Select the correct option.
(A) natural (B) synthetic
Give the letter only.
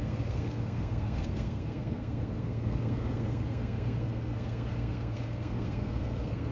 B